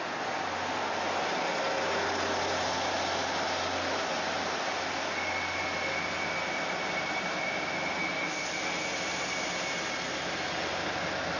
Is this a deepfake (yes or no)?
no